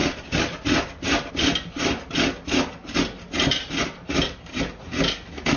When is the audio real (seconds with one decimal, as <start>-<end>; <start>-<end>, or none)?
1.3-5.6